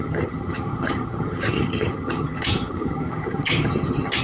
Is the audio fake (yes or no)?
yes